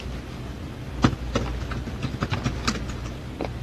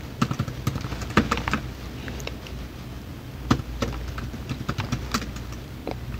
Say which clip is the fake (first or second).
second